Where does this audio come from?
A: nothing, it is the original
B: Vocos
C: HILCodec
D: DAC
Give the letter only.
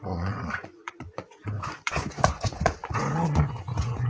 B